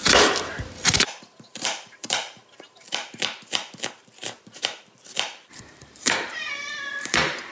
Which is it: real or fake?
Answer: fake